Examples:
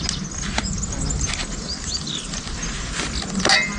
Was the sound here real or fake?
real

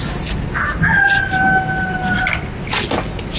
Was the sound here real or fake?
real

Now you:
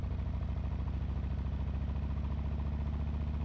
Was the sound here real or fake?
real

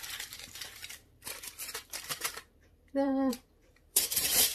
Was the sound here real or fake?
fake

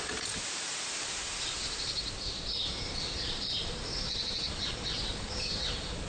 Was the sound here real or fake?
fake